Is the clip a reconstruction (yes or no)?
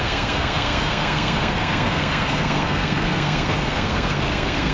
yes